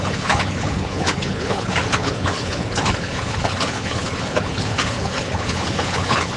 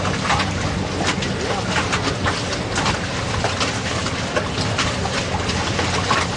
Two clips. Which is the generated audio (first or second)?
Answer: first